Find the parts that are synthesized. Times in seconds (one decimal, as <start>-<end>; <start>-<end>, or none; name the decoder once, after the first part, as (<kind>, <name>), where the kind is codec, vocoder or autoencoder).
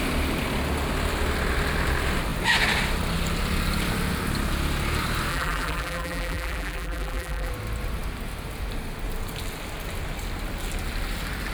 5.3-7.5 (vocoder, BigVGAN v2)